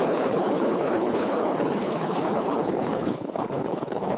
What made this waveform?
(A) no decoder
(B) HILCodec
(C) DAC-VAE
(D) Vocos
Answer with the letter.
B